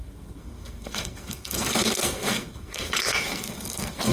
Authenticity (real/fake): fake